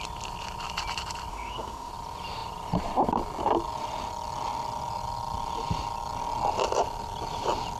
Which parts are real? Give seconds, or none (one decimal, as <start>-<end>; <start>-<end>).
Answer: 0.0-1.3; 1.9-7.8

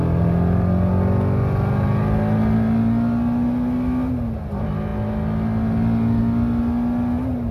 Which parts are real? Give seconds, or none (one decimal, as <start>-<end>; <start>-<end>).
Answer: 0.0-7.5

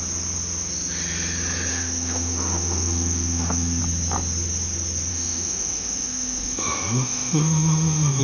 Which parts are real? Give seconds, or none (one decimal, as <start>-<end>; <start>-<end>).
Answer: 0.0-1.7; 3.8-5.1

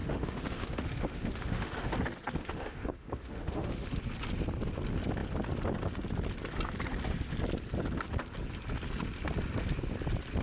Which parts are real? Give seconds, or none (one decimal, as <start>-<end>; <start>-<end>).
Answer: 1.9-2.4; 4.0-10.4

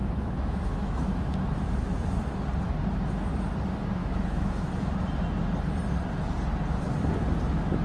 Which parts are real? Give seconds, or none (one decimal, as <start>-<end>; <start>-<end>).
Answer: 2.2-4.0; 4.7-7.8

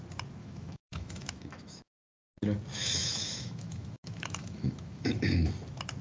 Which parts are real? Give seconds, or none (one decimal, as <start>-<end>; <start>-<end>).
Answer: 0.0-0.4; 2.3-2.7; 5.5-6.0

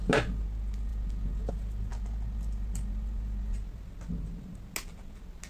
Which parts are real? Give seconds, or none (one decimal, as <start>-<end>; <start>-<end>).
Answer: 0.0-5.5